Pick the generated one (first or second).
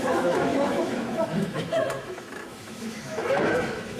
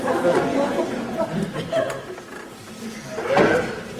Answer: first